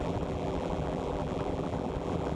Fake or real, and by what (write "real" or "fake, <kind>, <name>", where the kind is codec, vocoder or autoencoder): fake, vocoder, BigVGAN v2